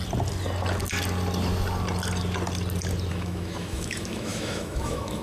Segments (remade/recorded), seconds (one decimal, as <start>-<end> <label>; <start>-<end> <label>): 0.0-3.1 recorded; 3.1-5.2 remade